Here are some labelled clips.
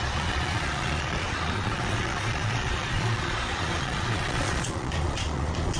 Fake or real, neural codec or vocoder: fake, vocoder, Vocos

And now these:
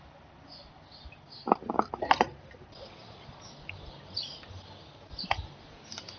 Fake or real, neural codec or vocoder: real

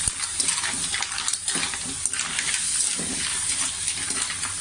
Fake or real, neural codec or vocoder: real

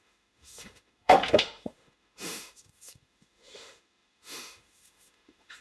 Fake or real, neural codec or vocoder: fake, autoencoder, DAC-VAE